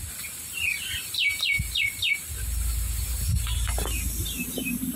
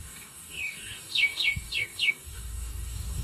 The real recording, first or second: first